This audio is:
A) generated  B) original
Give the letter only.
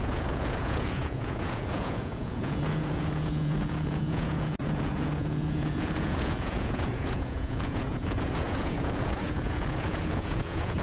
A